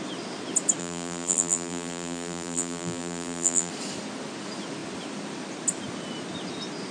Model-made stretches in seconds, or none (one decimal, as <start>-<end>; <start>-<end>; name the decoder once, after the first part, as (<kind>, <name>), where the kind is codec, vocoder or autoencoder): 0.8-3.7 (vocoder, BigVGAN v2)